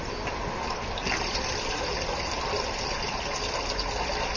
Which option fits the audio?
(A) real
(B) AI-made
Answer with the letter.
A